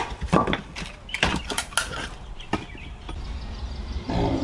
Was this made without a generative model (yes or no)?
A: yes